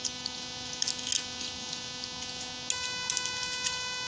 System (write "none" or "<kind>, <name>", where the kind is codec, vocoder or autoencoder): none